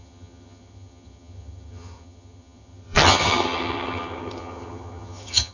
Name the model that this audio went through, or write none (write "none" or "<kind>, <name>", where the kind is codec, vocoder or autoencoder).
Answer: vocoder, HiFi-GAN